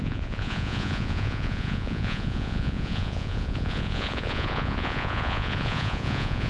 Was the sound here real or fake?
fake